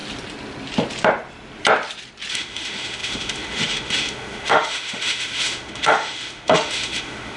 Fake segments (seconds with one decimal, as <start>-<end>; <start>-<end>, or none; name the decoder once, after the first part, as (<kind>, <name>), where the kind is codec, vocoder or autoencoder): 2.3-7.4 (autoencoder, DAC-VAE)